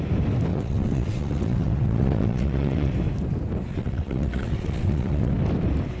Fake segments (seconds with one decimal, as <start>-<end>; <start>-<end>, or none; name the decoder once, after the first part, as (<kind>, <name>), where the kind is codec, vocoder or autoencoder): 0.5-2.9 (vocoder, WaveNeXt); 3.7-5.3